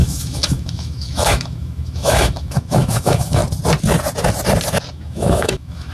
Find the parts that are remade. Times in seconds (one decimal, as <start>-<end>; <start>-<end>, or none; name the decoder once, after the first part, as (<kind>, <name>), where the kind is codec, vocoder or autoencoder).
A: 0.0-3.4 (autoencoder, DAC-VAE); 4.9-5.9